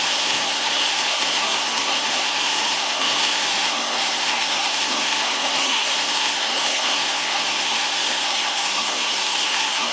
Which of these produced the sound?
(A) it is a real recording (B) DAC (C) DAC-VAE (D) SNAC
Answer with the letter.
D